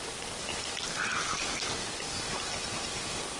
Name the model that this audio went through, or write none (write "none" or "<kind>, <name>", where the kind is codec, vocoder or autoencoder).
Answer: none